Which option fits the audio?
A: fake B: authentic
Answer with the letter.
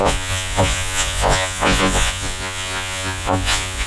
A